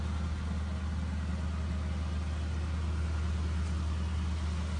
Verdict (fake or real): real